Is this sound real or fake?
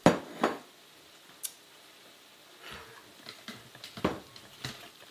real